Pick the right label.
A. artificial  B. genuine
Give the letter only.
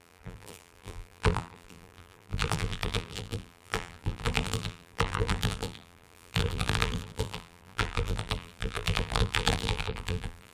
A